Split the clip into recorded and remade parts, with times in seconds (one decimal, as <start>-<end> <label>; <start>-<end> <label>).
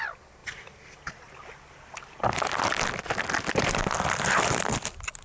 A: 0.0-5.2 recorded